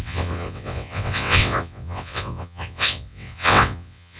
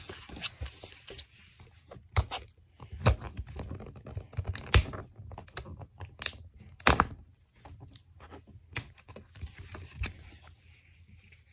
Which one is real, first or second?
second